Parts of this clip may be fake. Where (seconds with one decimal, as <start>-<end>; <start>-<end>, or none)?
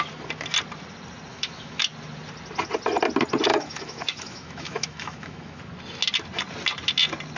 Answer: 1.3-1.8; 3.5-5.6